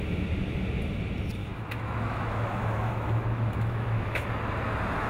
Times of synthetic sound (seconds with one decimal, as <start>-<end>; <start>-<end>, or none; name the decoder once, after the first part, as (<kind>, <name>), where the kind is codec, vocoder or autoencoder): 1.4-4.3 (autoencoder, DAC-VAE)